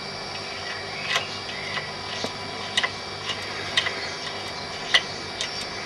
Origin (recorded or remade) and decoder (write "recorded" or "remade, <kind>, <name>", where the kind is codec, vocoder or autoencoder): recorded